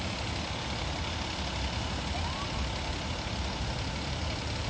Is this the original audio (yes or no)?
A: yes